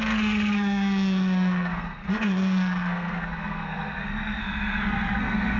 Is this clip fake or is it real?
fake